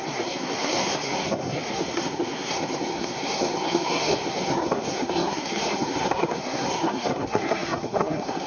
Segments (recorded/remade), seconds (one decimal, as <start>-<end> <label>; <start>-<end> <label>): 0.0-8.5 remade